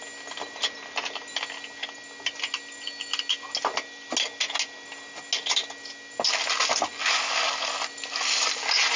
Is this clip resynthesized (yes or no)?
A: no